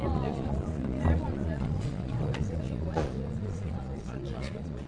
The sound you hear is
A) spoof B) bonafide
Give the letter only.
A